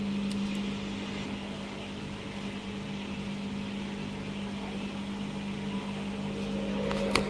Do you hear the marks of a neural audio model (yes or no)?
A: no